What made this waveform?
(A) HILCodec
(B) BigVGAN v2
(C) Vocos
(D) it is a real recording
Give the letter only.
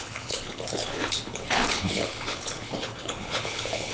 A